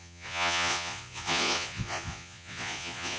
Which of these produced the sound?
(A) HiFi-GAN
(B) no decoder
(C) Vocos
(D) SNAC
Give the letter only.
C